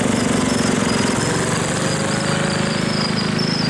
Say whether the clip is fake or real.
real